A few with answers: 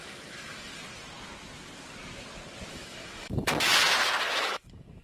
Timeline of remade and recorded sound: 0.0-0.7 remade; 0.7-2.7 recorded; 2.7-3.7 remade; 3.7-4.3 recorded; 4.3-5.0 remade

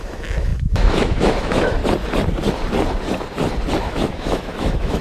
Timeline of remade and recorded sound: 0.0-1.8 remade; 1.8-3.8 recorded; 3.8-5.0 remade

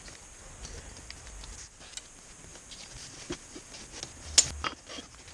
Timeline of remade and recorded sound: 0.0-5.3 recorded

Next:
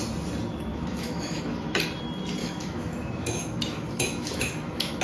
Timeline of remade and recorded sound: 0.0-0.7 recorded; 0.7-1.8 remade; 1.8-2.4 recorded; 2.4-5.0 remade

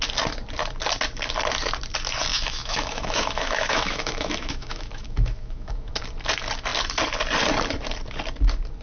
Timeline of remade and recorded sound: 0.0-2.3 recorded; 2.3-5.9 remade; 5.9-8.8 recorded